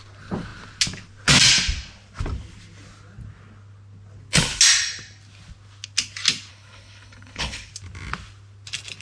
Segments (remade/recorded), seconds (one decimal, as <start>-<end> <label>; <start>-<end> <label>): 0.0-6.5 recorded; 6.5-7.7 remade; 7.7-9.0 recorded